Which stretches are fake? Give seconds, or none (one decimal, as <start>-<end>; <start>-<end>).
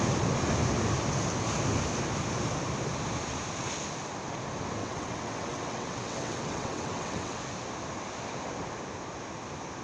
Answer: 4.8-7.4